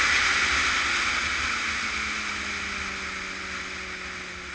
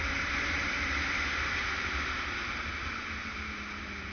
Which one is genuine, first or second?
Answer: first